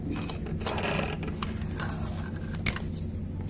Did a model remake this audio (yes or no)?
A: no